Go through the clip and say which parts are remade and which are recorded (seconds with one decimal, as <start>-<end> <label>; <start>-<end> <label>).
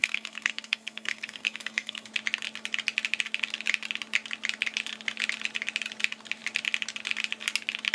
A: 0.0-2.1 remade; 2.1-7.9 recorded